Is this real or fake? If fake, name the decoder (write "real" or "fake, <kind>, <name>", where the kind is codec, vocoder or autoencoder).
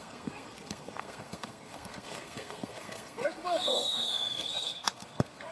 fake, codec, SNAC